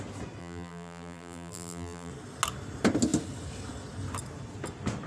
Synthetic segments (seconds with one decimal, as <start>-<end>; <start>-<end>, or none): 0.4-2.1